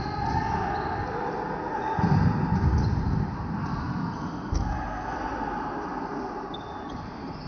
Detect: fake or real real